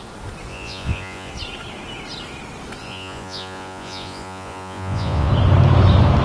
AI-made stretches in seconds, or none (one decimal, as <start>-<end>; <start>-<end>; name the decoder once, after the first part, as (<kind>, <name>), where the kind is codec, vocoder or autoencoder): 0.5-1.3 (vocoder, Vocos); 2.8-5.3